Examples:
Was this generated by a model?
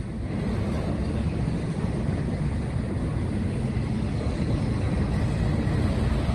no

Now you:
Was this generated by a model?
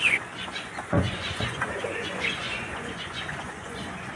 yes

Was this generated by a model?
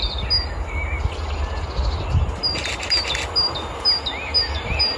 no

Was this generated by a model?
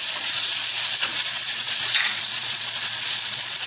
yes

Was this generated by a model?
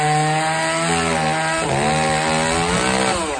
no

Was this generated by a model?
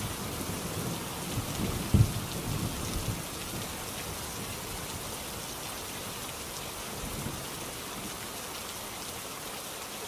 no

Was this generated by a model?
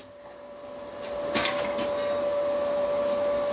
no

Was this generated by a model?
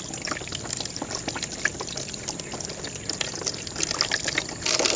no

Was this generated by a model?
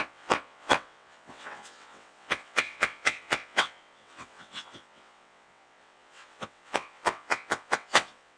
yes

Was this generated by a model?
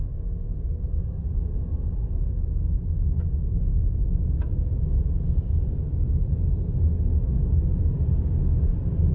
no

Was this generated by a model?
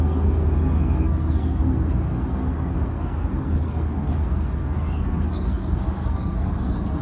yes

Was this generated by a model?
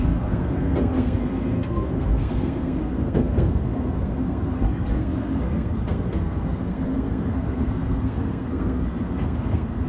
yes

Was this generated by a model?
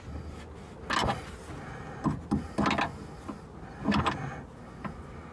no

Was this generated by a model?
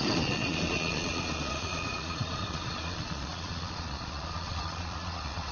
yes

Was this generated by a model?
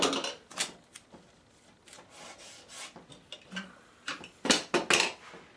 no